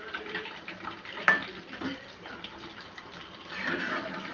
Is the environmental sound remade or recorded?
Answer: recorded